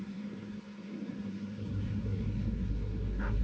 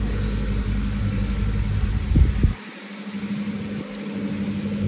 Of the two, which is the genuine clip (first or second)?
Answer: second